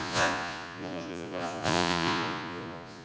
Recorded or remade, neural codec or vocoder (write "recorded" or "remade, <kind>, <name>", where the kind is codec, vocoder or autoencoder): remade, vocoder, Vocos